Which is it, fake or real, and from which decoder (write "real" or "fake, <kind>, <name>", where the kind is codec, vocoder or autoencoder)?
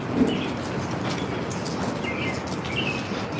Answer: real